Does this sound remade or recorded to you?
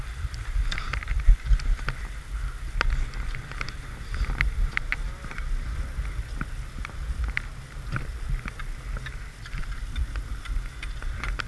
recorded